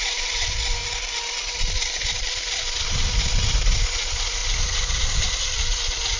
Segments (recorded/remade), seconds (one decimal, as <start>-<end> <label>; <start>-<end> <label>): 0.0-4.4 recorded; 4.4-5.4 remade; 5.4-6.2 recorded